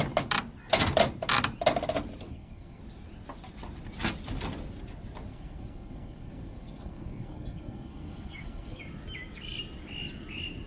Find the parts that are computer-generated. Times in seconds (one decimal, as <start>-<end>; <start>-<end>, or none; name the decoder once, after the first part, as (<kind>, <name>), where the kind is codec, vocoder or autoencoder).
2.3-2.8 (codec, SNAC); 5.3-8.8